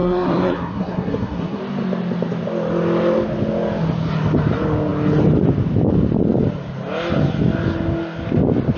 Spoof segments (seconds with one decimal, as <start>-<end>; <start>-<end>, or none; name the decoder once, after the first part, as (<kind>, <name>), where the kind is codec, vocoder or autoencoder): 0.0-1.6 (codec, SNAC)